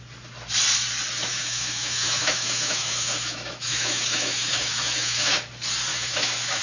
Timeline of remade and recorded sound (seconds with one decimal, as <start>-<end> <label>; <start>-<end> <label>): 0.0-1.3 recorded; 1.3-5.3 remade; 5.3-5.9 recorded; 5.9-6.6 remade